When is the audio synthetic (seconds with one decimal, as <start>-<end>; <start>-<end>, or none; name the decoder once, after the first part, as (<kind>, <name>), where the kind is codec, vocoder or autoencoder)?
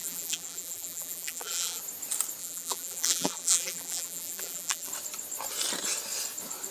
0.0-1.8 (vocoder, BigVGAN v2); 2.4-4.9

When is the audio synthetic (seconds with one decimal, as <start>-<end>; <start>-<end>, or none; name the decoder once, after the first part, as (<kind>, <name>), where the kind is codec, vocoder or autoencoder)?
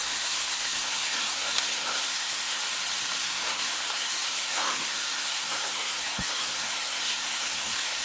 0.0-2.6 (codec, SNAC); 3.2-8.0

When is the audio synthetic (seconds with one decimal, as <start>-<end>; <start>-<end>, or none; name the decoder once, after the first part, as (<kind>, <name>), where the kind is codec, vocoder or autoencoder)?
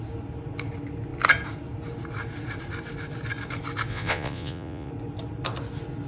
3.9-4.9 (vocoder, Vocos)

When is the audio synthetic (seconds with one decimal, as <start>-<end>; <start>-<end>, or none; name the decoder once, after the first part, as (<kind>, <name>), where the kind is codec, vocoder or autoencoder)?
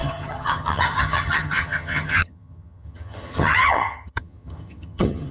0.0-5.3 (vocoder, HiFi-GAN)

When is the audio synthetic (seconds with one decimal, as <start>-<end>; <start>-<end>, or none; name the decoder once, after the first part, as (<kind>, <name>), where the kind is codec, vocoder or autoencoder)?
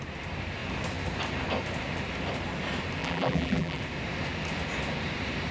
3.0-3.8 (vocoder, BigVGAN v2)